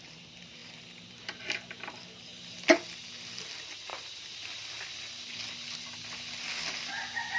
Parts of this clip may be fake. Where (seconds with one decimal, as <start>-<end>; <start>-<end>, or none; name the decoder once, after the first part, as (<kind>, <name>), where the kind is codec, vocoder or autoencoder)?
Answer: none